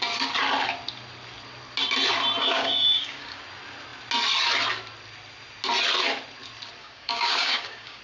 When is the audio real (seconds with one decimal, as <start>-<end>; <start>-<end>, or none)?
0.0-2.4; 3.4-6.8